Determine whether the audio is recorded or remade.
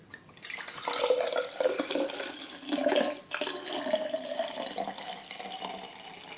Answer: recorded